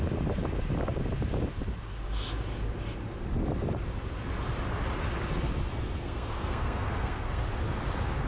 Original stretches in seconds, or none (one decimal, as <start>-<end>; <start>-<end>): 0.0-5.7; 7.4-8.3